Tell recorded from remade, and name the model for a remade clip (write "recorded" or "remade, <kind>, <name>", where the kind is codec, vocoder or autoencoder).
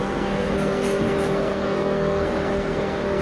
remade, codec, SNAC